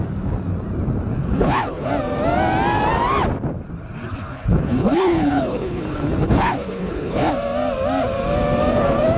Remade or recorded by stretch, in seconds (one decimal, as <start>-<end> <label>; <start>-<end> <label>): 0.0-1.2 recorded; 1.2-1.9 remade; 1.9-4.3 recorded; 4.3-7.3 remade; 7.3-9.2 recorded